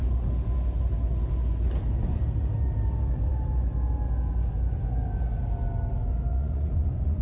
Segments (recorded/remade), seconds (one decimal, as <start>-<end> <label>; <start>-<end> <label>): 0.0-6.3 recorded; 6.3-7.2 remade